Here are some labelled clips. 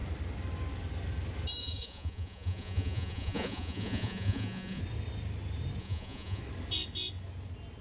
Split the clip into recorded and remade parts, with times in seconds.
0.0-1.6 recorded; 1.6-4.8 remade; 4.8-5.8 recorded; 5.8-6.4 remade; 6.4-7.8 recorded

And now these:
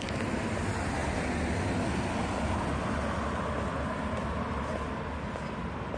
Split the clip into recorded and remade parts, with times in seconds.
0.0-6.0 recorded